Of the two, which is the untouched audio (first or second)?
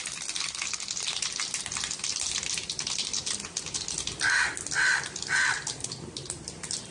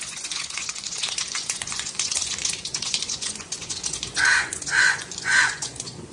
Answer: first